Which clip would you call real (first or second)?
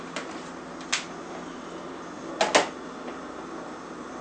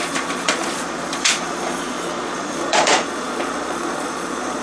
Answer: first